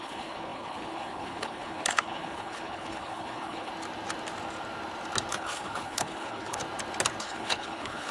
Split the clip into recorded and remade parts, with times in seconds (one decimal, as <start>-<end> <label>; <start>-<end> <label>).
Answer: 0.0-3.7 remade; 3.7-5.3 recorded; 5.3-6.6 remade; 6.6-7.2 recorded; 7.2-8.1 remade